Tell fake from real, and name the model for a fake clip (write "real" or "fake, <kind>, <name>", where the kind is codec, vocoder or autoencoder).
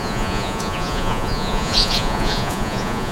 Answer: fake, vocoder, Vocos